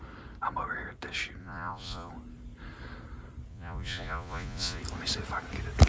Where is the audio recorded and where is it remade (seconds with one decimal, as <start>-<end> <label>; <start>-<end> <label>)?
0.0-1.4 recorded; 1.4-2.1 remade; 2.1-3.5 recorded; 3.5-4.8 remade; 4.8-5.9 recorded